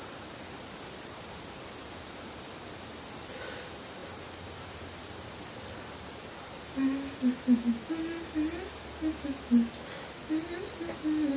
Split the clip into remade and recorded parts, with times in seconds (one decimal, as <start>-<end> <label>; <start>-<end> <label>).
0.0-11.4 recorded